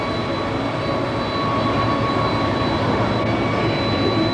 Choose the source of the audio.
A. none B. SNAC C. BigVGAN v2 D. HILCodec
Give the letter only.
A